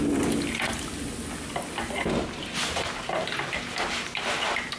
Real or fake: real